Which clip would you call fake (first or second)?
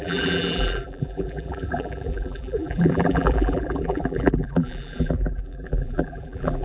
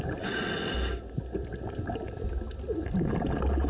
first